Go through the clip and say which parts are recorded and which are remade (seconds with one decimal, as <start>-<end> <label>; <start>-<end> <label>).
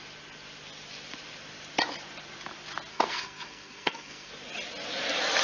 0.0-2.9 recorded; 2.9-4.3 remade; 4.3-5.4 recorded